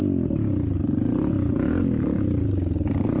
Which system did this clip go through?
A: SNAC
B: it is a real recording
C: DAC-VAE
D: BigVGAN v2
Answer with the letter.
B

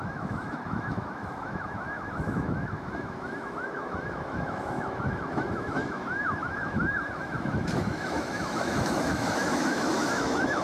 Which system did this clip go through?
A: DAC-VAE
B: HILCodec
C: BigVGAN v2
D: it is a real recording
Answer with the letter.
A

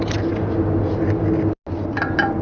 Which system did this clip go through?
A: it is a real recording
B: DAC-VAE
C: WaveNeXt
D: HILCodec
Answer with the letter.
A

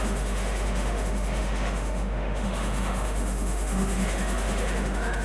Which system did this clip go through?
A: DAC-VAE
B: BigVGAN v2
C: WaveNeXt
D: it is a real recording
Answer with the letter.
A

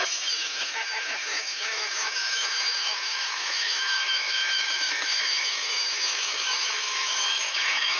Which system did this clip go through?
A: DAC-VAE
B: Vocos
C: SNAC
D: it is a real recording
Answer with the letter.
A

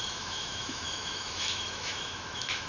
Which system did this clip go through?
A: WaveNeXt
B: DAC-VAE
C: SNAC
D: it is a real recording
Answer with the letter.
B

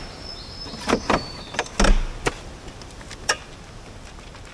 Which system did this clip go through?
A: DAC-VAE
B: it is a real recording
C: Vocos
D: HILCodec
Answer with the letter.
B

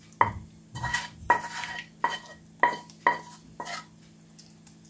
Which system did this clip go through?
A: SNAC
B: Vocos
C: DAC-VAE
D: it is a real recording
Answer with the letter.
D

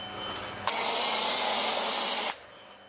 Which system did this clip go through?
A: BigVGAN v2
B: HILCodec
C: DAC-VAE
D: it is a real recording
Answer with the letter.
D